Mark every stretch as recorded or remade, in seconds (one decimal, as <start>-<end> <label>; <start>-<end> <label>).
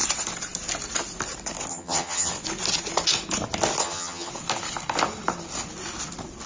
0.0-1.7 recorded; 1.7-2.3 remade; 2.3-3.8 recorded; 3.8-4.3 remade; 4.3-6.5 recorded